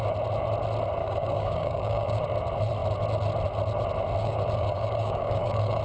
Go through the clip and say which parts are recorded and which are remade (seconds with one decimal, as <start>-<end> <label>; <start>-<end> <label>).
0.0-1.0 recorded; 1.0-2.2 remade; 2.2-4.2 recorded; 4.2-5.8 remade